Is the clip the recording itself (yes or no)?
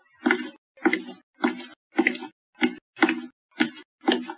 yes